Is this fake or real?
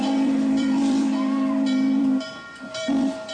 fake